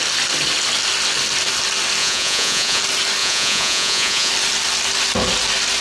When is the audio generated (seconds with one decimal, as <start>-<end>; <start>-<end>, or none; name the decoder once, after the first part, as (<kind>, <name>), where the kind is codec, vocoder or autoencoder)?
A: 2.0-2.8 (vocoder, Vocos); 3.2-4.3